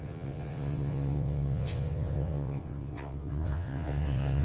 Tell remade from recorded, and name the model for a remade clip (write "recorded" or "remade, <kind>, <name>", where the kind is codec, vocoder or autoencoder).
remade, vocoder, WaveNeXt